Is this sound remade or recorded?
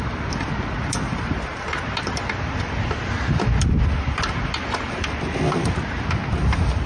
recorded